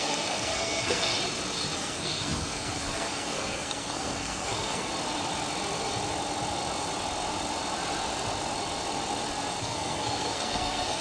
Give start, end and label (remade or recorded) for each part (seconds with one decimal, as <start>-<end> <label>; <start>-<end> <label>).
0.0-1.1 remade; 1.1-1.8 recorded; 1.8-4.9 remade; 4.9-9.6 recorded; 9.6-11.0 remade